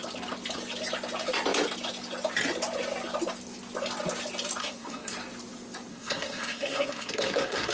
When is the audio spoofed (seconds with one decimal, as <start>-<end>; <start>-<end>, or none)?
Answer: 4.6-5.1; 5.9-7.7